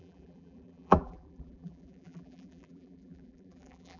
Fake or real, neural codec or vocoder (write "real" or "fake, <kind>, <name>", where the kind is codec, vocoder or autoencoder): fake, vocoder, BigVGAN v2